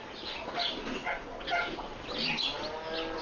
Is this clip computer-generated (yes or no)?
no